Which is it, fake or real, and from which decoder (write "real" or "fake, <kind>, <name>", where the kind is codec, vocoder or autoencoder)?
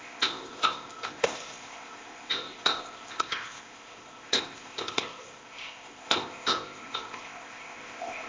fake, codec, ZipCodec